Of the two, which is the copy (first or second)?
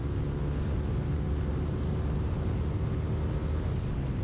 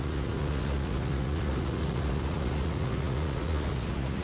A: second